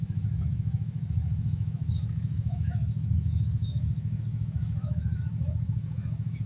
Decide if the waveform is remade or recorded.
remade